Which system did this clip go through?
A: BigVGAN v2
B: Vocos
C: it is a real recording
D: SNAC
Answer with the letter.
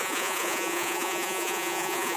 B